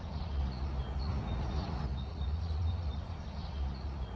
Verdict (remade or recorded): remade